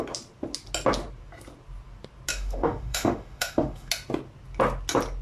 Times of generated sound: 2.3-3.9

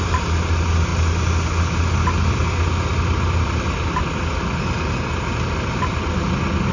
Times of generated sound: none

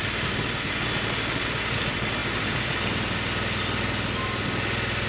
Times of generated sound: none